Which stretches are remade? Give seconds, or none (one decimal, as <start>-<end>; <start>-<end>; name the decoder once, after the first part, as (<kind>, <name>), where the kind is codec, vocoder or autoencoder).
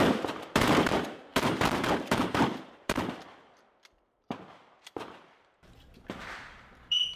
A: 0.0-7.2 (vocoder, BigVGAN v2)